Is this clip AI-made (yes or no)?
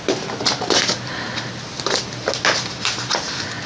no